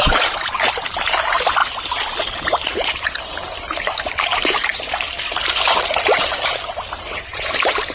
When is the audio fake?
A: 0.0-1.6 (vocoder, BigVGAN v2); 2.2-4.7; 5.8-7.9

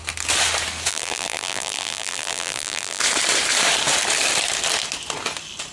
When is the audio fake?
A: 0.9-3.0 (vocoder, BigVGAN v2)

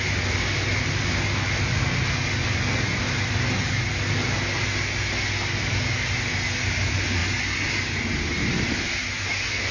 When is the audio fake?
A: none

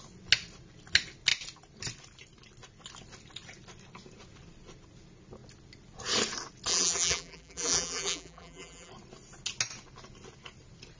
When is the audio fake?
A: 6.7-8.9 (vocoder, BigVGAN v2)

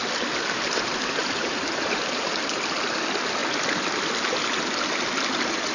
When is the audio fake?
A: 1.2-2.3 (vocoder, BigVGAN v2)

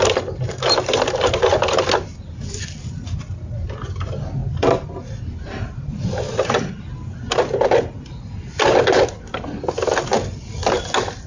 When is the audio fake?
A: 5.9-6.7 (vocoder, BigVGAN v2)

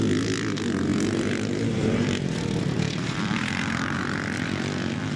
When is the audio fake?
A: 0.9-4.0 (vocoder, BigVGAN v2)

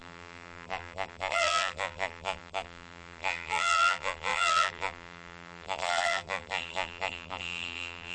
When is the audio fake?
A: 0.0-8.1 (vocoder, BigVGAN v2)